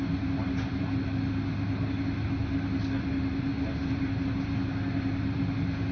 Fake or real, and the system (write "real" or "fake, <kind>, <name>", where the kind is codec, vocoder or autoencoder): real